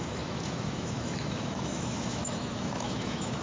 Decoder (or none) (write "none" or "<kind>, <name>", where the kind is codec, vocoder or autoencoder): autoencoder, DAC-VAE